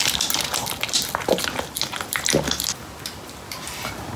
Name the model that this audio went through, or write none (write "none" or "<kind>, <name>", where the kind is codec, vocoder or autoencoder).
none